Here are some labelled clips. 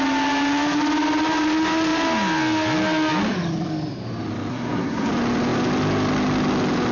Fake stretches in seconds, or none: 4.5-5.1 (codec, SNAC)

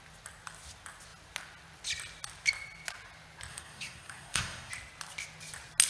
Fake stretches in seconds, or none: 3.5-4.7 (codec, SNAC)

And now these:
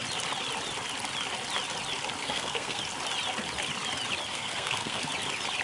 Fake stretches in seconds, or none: 2.2-2.8 (codec, SNAC); 4.3-5.1

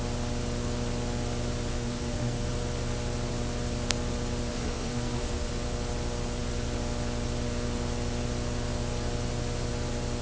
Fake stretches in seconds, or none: 1.7-2.5 (codec, SNAC); 4.5-5.5